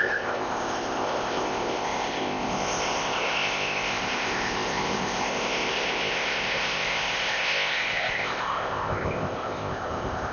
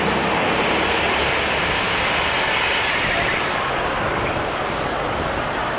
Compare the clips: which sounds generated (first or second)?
first